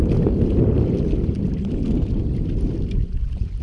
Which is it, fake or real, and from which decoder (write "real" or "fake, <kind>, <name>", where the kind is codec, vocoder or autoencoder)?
real